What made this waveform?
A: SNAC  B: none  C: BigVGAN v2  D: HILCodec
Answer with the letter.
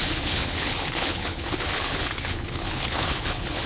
D